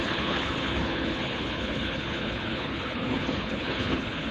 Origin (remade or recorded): remade